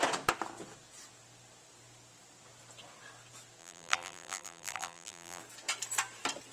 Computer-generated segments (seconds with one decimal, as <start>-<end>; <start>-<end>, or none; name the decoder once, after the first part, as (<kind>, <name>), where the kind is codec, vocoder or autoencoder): 3.6-5.4 (vocoder, BigVGAN v2)

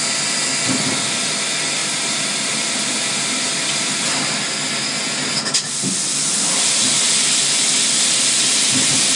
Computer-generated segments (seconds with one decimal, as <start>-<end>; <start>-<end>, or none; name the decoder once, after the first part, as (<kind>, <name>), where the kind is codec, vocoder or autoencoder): 1.8-4.2 (vocoder, BigVGAN v2)